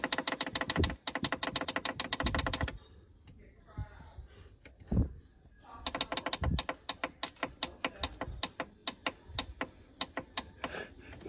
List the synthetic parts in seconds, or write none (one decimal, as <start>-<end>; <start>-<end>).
none